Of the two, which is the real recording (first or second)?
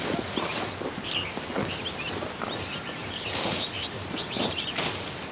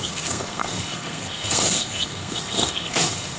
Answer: first